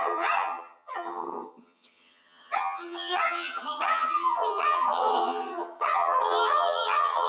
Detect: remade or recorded remade